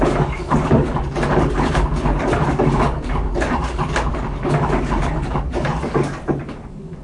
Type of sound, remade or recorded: remade